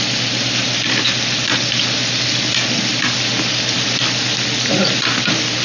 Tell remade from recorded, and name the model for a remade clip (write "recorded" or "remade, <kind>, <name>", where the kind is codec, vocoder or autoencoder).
recorded